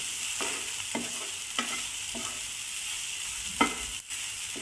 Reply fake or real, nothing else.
real